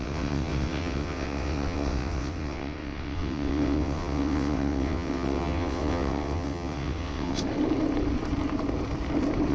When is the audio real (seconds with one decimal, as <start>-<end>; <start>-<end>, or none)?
7.4-9.5